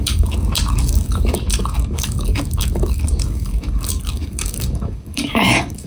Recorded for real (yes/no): no